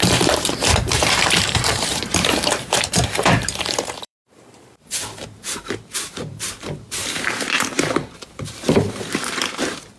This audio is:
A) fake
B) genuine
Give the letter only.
A